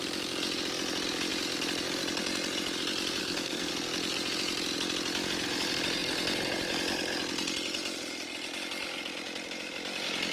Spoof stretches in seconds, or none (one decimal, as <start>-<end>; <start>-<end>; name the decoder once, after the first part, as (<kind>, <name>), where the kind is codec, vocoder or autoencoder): 3.2-3.7 (codec, SNAC)